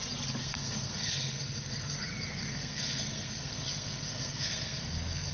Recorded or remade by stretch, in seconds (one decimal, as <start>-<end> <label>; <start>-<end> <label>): 0.0-0.4 recorded; 0.4-2.0 remade; 2.0-2.4 recorded; 2.4-5.3 remade